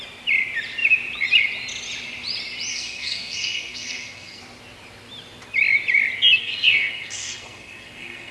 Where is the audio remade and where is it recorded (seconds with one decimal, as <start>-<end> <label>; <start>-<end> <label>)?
0.0-2.7 recorded; 2.7-4.4 remade; 4.4-6.4 recorded; 6.4-8.3 remade